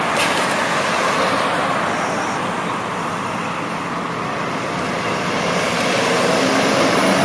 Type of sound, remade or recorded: recorded